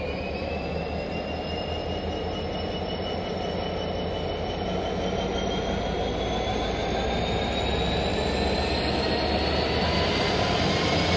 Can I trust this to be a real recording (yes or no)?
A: yes